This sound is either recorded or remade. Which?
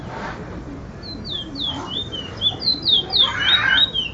recorded